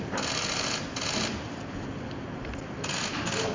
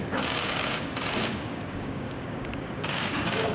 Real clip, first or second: first